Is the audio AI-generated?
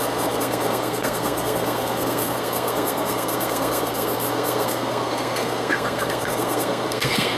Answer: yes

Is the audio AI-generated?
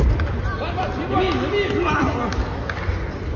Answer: no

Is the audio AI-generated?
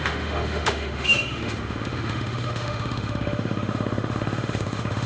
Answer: yes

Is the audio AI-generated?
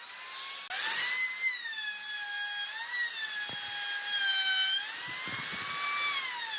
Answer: no